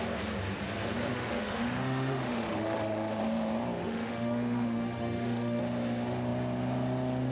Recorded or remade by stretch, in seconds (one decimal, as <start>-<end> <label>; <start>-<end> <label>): 0.0-1.1 recorded; 1.1-3.2 remade; 3.2-3.8 recorded; 3.8-5.6 remade; 5.6-7.3 recorded